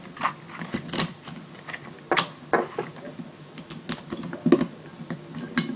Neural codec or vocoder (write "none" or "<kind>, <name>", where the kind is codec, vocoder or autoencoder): none